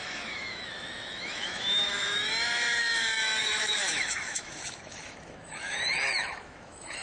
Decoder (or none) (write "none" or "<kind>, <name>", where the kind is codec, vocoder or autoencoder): autoencoder, DAC-VAE